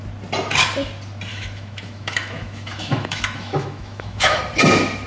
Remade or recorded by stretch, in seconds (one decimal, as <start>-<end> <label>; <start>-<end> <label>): 0.0-1.3 recorded; 1.3-4.4 remade; 4.4-5.1 recorded